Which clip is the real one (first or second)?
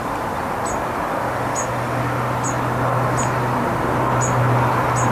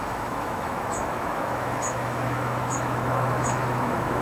first